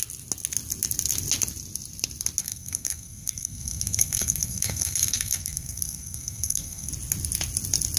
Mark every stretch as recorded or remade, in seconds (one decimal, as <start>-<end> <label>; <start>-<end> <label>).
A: 0.0-2.4 recorded; 2.4-6.9 remade; 6.9-8.0 recorded